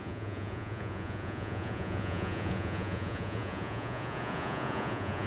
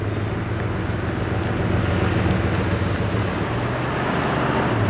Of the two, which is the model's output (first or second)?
first